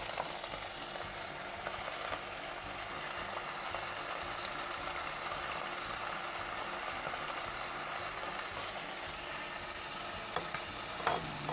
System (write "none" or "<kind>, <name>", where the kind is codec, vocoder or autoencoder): none